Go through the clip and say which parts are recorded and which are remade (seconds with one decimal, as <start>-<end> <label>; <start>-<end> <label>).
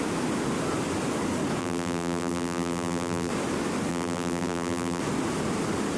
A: 0.0-1.6 recorded; 1.6-3.3 remade; 3.3-3.9 recorded; 3.9-5.0 remade; 5.0-6.0 recorded